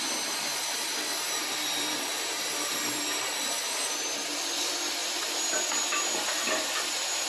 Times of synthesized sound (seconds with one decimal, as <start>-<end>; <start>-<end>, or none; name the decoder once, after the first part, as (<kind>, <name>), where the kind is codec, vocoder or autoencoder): 0.0-7.3 (vocoder, BigVGAN v2)